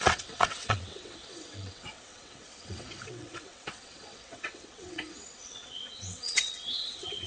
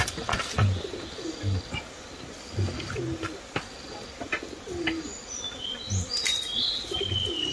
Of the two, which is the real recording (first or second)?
second